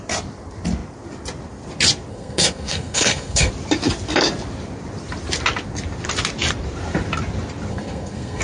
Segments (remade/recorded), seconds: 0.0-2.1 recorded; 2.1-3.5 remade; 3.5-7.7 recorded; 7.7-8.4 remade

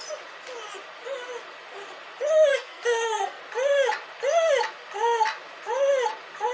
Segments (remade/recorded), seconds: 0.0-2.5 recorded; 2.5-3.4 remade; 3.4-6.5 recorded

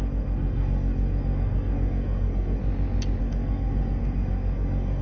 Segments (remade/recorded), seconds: 0.0-2.6 remade; 2.6-3.2 recorded; 3.2-5.0 remade